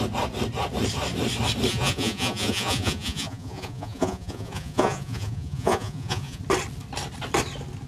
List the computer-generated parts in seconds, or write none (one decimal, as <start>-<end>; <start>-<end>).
1.7-6.4